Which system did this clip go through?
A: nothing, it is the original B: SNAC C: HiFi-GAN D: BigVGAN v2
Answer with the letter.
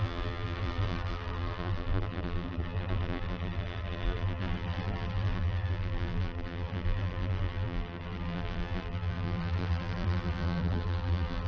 D